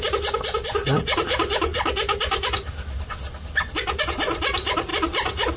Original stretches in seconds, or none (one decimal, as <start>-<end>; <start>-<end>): 0.0-5.6